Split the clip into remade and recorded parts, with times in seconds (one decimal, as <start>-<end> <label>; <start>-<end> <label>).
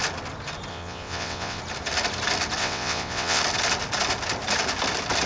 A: 0.0-0.7 recorded; 0.7-1.6 remade; 1.6-2.6 recorded; 2.6-3.4 remade; 3.4-5.3 recorded